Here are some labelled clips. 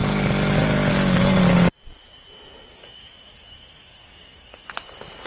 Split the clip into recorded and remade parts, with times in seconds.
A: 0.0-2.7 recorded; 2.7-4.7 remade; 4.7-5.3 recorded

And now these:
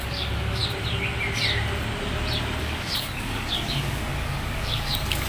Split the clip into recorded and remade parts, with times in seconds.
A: 0.0-0.6 remade; 0.6-2.6 recorded; 2.6-5.3 remade

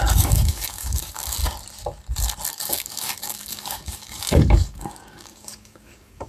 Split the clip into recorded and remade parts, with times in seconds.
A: 0.0-1.4 remade; 1.4-2.5 recorded; 2.5-6.3 remade